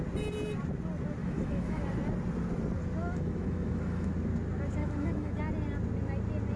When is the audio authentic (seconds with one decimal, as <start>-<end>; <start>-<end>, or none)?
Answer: 0.0-1.2; 1.8-3.0; 4.1-4.8; 5.4-6.6